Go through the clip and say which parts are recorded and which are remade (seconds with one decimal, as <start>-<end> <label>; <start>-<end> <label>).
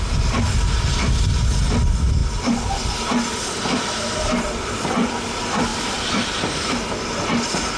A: 0.0-7.8 recorded